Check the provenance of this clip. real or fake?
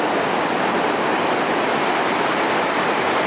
real